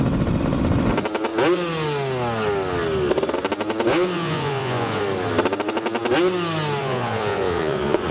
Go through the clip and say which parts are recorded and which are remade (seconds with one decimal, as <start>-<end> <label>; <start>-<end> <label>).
0.0-3.9 recorded; 3.9-5.0 remade; 5.0-6.8 recorded; 6.8-8.1 remade